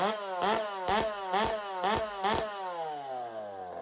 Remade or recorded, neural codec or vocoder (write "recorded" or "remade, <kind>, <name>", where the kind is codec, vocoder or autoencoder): recorded